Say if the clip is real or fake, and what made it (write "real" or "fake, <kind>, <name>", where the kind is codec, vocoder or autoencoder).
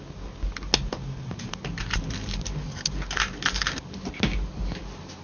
real